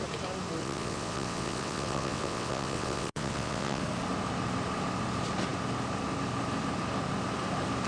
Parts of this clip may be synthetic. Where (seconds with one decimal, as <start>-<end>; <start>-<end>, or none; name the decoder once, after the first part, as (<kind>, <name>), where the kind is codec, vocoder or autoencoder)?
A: 0.6-3.8 (vocoder, WaveNeXt)